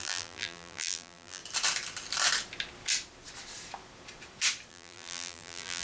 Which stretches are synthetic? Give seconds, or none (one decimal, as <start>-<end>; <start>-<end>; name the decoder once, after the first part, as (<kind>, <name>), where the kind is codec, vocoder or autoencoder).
0.0-1.4 (vocoder, BigVGAN v2); 4.7-5.8